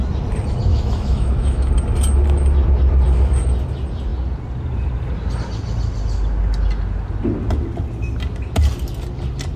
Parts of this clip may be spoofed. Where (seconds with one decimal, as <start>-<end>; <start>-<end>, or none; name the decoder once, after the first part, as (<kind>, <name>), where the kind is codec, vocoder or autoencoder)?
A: 0.7-1.7 (autoencoder, DAC-VAE)

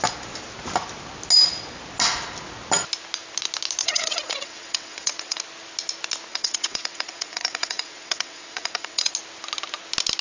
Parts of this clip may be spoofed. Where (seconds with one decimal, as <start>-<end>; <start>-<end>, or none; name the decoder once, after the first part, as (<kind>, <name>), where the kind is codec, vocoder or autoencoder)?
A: 3.8-5.4 (vocoder, WaveNeXt); 6.3-9.1

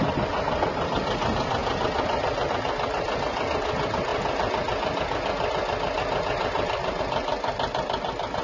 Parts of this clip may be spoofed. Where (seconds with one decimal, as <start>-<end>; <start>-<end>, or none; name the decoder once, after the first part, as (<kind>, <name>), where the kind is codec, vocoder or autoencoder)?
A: none

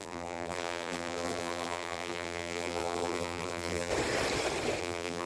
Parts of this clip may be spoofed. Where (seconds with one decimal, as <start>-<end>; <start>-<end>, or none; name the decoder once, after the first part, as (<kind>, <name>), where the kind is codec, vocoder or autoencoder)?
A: 0.0-3.9 (vocoder, BigVGAN v2); 4.8-5.3